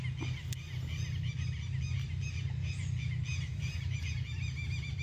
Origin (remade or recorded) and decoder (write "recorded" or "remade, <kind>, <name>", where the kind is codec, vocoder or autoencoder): recorded